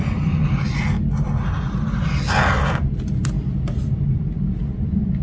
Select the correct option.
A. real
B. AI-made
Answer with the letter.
A